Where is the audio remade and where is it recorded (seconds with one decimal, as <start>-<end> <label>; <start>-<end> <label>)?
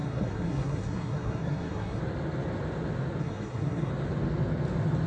0.0-2.0 remade; 2.0-3.2 recorded; 3.2-3.9 remade; 3.9-5.1 recorded